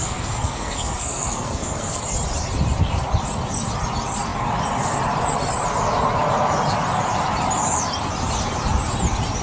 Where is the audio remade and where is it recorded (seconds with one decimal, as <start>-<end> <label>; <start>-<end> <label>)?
0.0-2.0 remade; 2.0-9.4 recorded

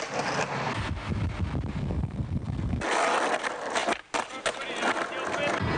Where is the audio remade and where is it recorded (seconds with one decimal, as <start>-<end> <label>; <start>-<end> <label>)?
0.0-1.8 recorded; 1.8-2.8 remade; 2.8-5.8 recorded

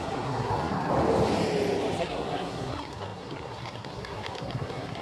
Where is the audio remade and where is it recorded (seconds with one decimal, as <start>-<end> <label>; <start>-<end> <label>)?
0.0-0.9 remade; 0.9-2.0 recorded; 2.0-5.0 remade

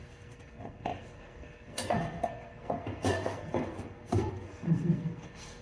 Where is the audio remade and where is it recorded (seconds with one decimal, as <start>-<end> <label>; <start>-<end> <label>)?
0.0-5.6 remade

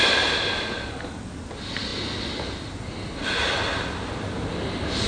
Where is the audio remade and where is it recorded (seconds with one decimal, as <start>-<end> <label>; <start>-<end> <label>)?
0.0-5.1 recorded

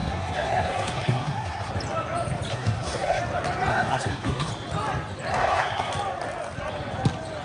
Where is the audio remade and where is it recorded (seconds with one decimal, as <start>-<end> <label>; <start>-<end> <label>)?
0.0-1.7 remade; 1.7-2.5 recorded; 2.5-3.2 remade; 3.2-3.7 recorded; 3.7-4.5 remade; 4.5-5.3 recorded; 5.3-5.9 remade; 5.9-7.4 recorded

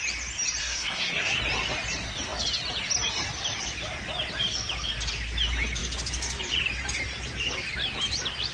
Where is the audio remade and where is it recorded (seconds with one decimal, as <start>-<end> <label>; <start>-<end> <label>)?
0.0-0.6 recorded; 0.6-1.4 remade; 1.4-8.5 recorded

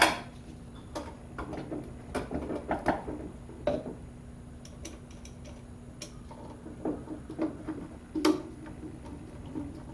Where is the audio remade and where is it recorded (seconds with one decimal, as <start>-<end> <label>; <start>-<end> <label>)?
0.0-9.9 recorded